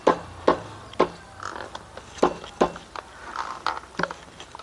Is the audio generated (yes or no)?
no